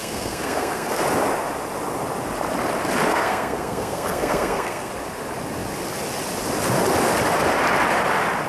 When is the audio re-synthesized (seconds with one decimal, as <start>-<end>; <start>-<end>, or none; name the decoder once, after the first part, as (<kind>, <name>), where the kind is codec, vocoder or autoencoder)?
0.0-1.0 (codec, SNAC); 3.1-4.9